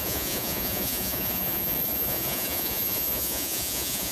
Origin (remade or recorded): remade